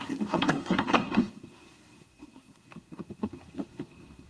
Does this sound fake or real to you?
fake